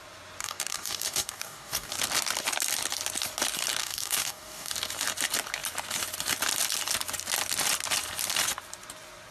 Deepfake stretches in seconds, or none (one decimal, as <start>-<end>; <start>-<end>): 0.4-1.9; 3.8-4.7